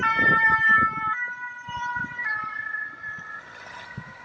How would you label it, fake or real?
fake